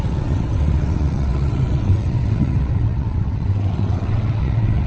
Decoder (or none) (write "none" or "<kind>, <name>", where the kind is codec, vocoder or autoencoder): vocoder, WaveNeXt